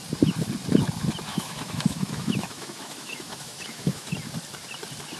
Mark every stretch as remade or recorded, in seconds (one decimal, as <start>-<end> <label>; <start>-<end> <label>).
0.0-1.3 recorded; 1.3-4.1 remade; 4.1-5.2 recorded